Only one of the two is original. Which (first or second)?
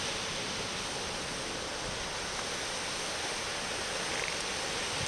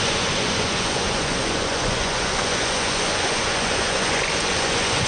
first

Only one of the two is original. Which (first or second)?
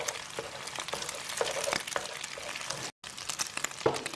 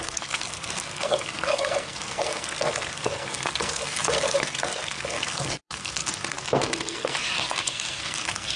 first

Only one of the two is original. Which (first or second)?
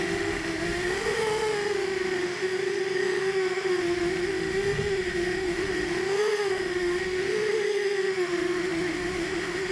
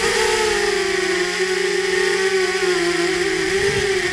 second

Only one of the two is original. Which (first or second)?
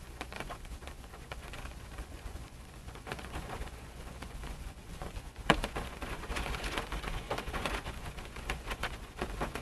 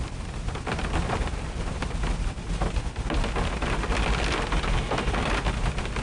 second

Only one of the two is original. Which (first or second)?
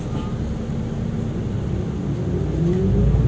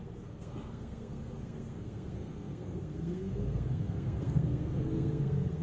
first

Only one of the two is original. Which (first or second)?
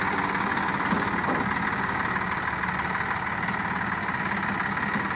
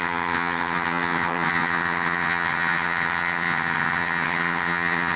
first